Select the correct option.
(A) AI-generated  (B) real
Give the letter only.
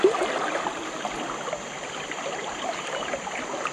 B